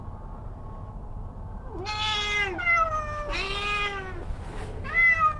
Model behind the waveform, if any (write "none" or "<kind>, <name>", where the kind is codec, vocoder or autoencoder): none